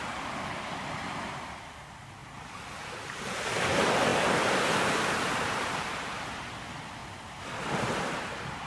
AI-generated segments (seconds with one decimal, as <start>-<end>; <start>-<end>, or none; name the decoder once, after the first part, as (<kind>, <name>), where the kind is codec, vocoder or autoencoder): none